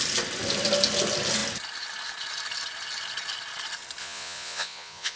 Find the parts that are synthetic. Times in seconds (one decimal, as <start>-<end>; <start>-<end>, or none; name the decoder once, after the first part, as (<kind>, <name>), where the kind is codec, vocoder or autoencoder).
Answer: 4.0-5.2 (vocoder, Vocos)